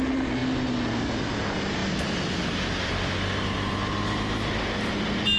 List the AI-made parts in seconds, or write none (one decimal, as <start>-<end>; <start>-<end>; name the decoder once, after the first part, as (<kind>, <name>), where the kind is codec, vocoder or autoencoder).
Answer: none